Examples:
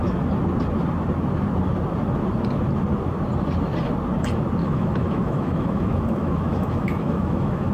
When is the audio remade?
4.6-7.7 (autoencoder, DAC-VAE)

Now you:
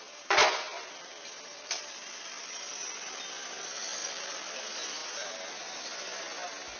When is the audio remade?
0.7-3.2 (vocoder, BigVGAN v2); 4.0-4.5